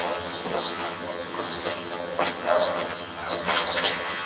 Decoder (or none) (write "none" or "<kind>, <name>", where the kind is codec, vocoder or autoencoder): vocoder, HiFi-GAN